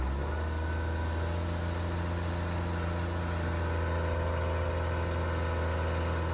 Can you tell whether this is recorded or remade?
recorded